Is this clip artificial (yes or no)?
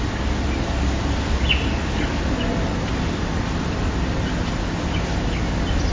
no